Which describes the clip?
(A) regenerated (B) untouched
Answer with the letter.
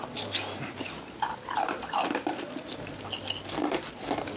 B